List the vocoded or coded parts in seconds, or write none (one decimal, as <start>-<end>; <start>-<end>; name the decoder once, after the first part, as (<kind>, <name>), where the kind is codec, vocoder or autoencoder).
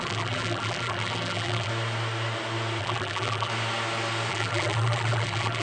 0.0-1.7 (vocoder, BigVGAN v2); 2.8-3.5; 4.3-5.6